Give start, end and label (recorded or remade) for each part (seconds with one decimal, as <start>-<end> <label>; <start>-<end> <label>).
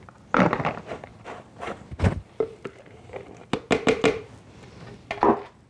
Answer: 0.0-5.7 recorded